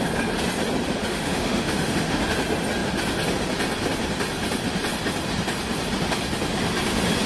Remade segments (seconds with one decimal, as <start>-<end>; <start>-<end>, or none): 1.0-2.2